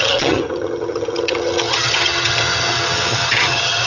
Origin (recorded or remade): remade